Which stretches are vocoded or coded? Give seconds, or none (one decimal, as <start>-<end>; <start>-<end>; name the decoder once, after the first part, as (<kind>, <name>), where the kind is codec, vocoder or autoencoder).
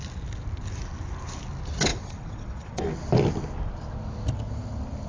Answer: 1.9-2.8 (vocoder, WaveNeXt)